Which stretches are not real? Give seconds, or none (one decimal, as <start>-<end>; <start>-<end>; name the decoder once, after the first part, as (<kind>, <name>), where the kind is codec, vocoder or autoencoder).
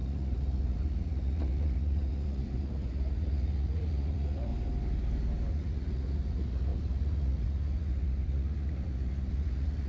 0.0-4.5 (vocoder, Vocos); 5.5-9.9